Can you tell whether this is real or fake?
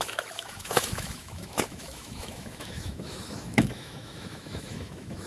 fake